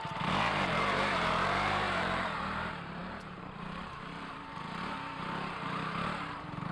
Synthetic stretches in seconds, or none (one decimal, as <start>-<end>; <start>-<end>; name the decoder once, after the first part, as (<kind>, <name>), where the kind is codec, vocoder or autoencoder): 0.0-6.7 (vocoder, BigVGAN v2)